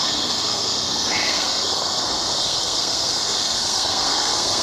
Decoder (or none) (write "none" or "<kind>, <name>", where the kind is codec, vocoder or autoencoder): codec, SNAC